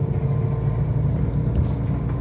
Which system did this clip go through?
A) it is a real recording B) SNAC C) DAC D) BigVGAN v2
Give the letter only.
A